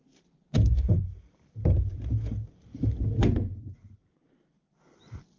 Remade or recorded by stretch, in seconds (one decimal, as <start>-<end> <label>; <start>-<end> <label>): 0.0-5.4 recorded